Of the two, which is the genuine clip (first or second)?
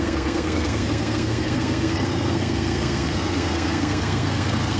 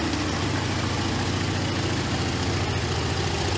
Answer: second